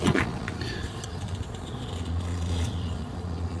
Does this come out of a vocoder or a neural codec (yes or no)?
yes